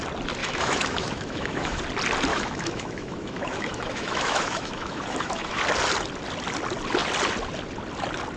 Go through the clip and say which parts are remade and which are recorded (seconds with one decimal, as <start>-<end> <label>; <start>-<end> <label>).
0.0-0.4 recorded; 0.4-1.8 remade; 1.8-2.3 recorded; 2.3-5.6 remade; 5.6-8.4 recorded